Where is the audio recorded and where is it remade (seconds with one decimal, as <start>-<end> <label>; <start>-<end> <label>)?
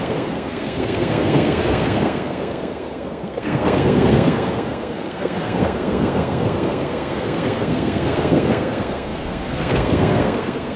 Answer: 0.0-10.8 remade